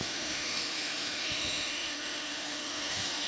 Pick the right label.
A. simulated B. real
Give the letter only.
A